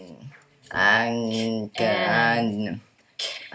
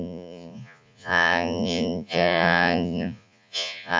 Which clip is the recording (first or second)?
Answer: first